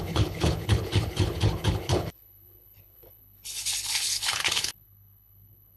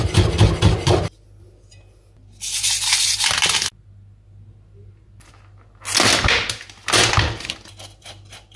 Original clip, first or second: second